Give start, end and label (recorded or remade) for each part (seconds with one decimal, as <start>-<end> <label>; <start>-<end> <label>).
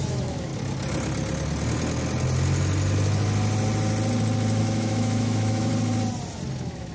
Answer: 0.0-0.5 remade; 0.5-4.6 recorded; 4.6-5.7 remade; 5.7-6.5 recorded; 6.5-6.9 remade